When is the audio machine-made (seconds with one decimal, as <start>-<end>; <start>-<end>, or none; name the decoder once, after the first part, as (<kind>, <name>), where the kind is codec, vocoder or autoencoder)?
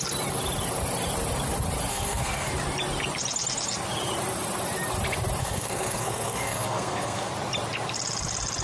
1.9-2.5 (codec, SNAC); 5.4-7.3